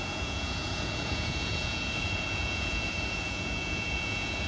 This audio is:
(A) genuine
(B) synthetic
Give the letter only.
B